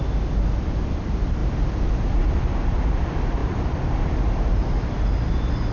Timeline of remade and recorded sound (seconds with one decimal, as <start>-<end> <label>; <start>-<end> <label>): 0.0-1.4 recorded; 1.4-2.4 remade; 2.4-3.4 recorded; 3.4-5.1 remade; 5.1-5.7 recorded